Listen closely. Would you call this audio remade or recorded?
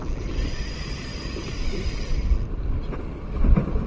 recorded